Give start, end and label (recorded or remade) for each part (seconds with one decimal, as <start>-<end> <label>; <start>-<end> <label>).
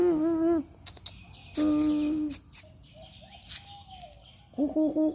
0.0-5.1 recorded